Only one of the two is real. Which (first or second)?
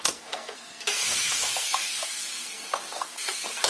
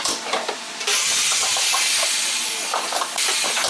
second